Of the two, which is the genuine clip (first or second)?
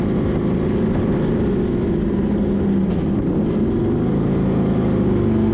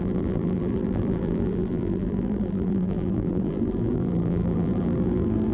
first